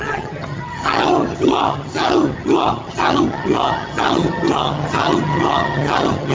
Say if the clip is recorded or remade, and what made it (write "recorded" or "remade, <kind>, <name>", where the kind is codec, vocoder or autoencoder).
remade, vocoder, HiFi-GAN